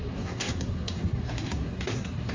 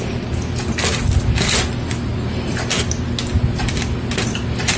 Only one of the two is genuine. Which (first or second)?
second